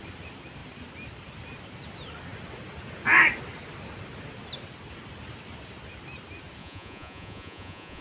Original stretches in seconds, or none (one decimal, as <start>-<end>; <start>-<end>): 0.0-6.6